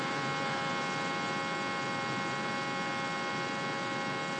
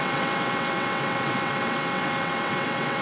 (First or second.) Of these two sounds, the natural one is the first